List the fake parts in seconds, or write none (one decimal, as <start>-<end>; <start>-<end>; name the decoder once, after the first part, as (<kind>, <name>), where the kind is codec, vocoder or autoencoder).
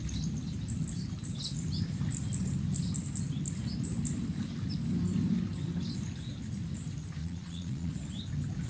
7.2-7.9 (vocoder, Vocos)